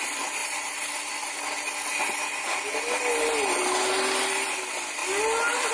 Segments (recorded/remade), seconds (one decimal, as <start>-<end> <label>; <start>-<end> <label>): 0.0-0.4 recorded; 0.4-1.3 remade; 1.3-5.0 recorded; 5.0-5.7 remade